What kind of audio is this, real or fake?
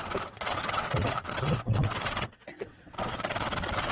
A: fake